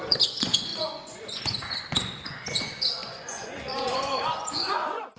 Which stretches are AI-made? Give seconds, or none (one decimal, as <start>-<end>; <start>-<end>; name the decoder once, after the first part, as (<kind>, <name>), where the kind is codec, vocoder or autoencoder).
0.0-5.2 (vocoder, Vocos)